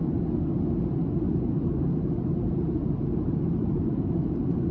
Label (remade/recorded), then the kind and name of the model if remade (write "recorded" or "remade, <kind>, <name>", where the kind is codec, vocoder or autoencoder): recorded